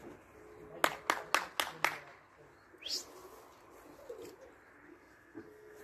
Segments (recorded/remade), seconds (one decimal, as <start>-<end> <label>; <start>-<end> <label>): 0.0-4.9 recorded; 4.9-5.8 remade